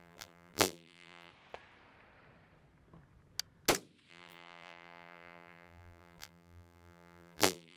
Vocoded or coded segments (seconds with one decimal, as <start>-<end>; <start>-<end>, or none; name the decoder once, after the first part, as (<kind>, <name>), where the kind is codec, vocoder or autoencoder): 0.0-1.3 (vocoder, BigVGAN v2); 4.1-7.8

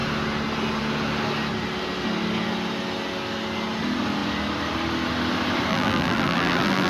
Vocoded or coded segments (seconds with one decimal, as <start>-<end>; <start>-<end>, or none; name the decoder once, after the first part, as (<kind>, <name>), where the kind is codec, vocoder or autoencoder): 5.7-6.9 (vocoder, BigVGAN v2)

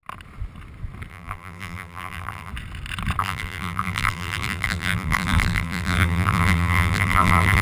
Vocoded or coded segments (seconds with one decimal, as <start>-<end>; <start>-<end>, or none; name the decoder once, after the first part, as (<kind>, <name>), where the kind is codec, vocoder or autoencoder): 1.1-2.5 (vocoder, BigVGAN v2); 3.2-7.6

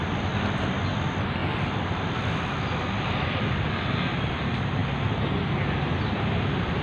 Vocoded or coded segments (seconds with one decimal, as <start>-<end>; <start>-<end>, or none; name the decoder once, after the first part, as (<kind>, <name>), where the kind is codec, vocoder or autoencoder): 0.0-1.4 (vocoder, BigVGAN v2); 2.9-4.8; 5.9-6.8

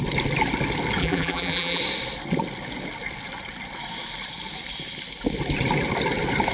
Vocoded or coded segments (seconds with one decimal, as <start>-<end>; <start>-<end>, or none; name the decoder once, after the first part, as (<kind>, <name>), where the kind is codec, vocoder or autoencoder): 1.0-1.8 (vocoder, BigVGAN v2)

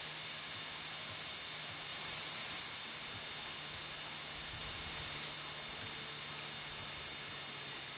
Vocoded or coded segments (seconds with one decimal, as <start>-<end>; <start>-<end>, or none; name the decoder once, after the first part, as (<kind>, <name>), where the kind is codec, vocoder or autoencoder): 1.9-2.6 (vocoder, BigVGAN v2); 4.6-5.3

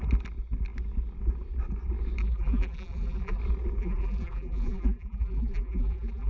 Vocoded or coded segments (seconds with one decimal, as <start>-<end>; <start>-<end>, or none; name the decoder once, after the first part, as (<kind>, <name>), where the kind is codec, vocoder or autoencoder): 2.2-3.4 (vocoder, BigVGAN v2); 3.8-6.3